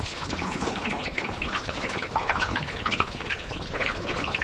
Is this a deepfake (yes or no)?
yes